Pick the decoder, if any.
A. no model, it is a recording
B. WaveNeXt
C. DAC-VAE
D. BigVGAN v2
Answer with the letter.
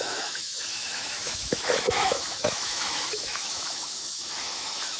C